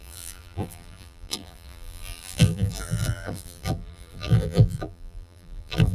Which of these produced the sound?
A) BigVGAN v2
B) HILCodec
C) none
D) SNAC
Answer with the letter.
A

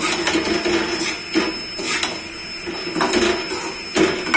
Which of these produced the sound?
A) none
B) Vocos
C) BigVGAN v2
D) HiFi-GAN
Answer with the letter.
A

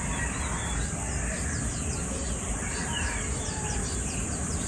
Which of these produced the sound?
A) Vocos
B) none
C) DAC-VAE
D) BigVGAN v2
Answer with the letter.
D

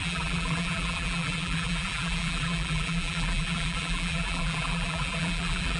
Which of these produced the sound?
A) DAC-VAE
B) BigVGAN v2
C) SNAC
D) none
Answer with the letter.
B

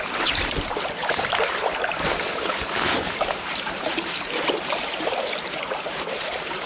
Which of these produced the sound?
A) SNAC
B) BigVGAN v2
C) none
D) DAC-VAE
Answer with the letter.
B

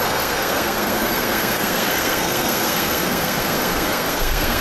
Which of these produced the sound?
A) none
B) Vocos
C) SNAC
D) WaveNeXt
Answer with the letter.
C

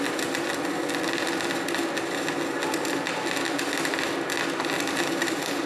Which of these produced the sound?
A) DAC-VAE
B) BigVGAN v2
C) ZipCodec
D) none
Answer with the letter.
D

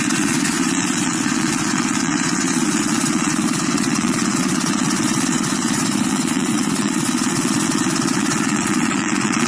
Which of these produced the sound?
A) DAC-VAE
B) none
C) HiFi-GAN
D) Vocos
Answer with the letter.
D